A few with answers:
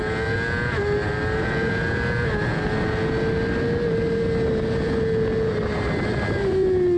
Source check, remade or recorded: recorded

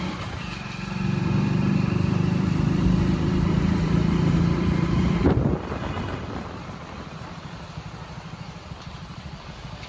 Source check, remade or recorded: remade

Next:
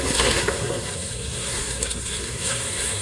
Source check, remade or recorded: remade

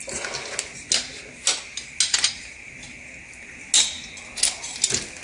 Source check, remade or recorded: recorded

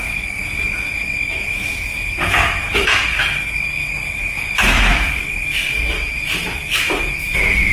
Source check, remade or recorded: remade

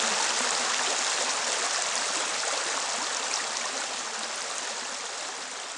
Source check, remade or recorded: recorded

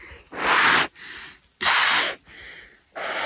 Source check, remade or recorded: recorded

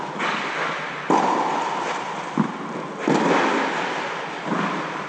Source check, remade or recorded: recorded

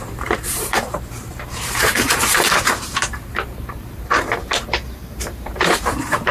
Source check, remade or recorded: remade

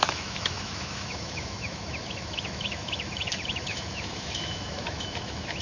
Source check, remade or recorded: remade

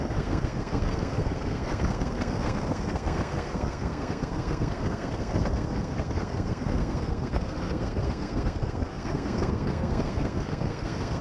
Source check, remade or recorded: remade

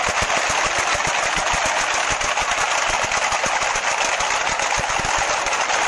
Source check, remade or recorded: recorded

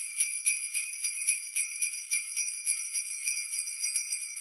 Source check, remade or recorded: remade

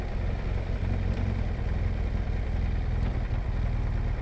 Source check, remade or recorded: recorded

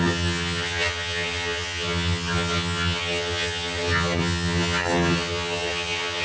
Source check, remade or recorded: remade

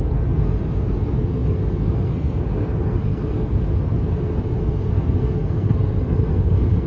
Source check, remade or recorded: remade